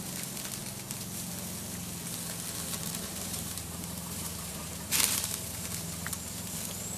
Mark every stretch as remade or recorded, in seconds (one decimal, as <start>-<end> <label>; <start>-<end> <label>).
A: 0.0-2.8 recorded; 2.8-6.6 remade; 6.6-7.0 recorded